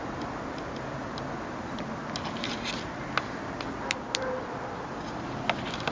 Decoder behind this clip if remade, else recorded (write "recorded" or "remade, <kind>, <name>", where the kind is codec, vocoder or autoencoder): recorded